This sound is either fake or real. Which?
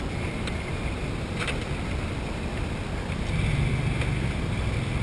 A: real